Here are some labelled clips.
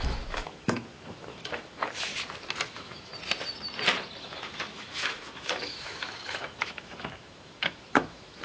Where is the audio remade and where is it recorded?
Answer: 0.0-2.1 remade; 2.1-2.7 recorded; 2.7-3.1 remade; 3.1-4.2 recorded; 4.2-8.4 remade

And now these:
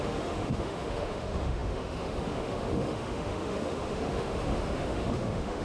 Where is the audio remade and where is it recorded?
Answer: 0.0-5.6 remade